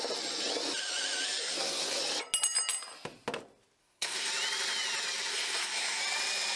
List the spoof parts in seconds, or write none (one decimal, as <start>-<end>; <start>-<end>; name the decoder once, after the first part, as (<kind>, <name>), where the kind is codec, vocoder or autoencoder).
1.4-2.0 (codec, SNAC); 3.8-4.3; 5.3-6.0